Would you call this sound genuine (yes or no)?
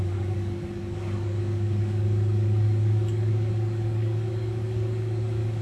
no